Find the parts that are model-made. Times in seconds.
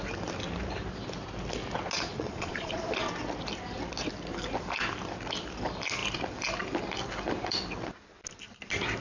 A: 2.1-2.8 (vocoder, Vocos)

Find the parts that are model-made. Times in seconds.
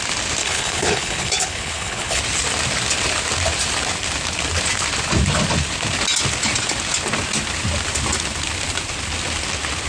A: 0.4-2.2 (codec, HILCodec)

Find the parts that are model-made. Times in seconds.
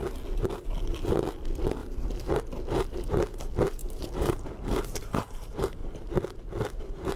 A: 1.8-2.3 (vocoder, BigVGAN v2); 3.8-5.3; 5.8-6.4